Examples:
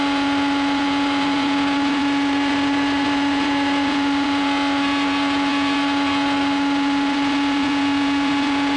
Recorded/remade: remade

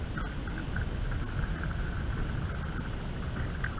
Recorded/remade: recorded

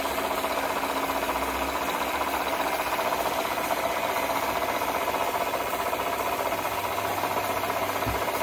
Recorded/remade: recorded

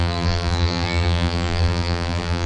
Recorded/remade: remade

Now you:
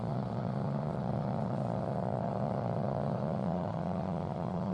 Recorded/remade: remade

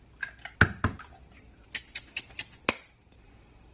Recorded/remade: remade